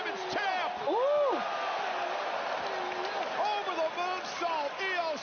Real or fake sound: real